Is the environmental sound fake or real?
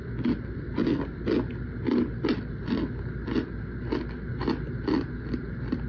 real